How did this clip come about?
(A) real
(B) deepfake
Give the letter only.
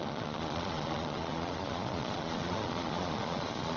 B